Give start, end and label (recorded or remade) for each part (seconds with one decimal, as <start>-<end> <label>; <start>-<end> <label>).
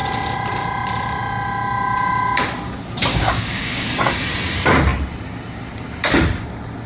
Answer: 0.0-3.1 recorded; 3.1-3.9 remade; 3.9-6.9 recorded